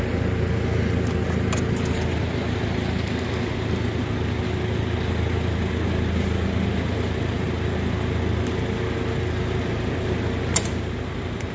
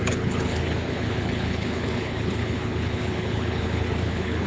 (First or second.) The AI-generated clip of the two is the second